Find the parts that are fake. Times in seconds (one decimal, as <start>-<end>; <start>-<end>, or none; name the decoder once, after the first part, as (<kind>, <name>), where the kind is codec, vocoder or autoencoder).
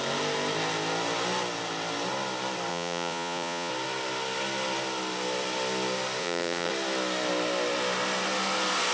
2.7-3.7 (vocoder, Vocos); 6.2-6.7